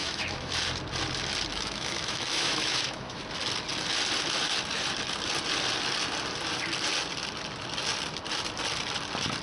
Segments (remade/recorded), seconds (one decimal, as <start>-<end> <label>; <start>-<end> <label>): 0.0-0.5 remade; 0.5-1.5 recorded; 1.5-3.2 remade; 3.2-9.4 recorded